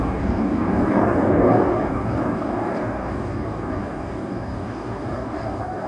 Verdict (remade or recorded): remade